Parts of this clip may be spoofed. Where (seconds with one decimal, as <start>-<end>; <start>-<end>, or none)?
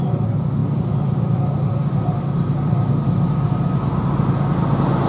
none